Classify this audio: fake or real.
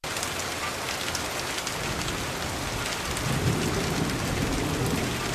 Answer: real